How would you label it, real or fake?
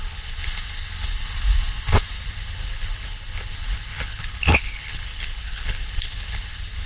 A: fake